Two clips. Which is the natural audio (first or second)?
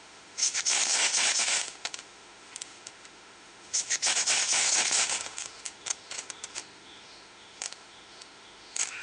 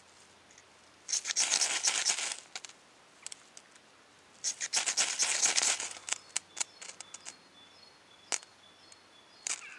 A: second